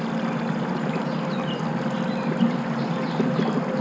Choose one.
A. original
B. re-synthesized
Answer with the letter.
A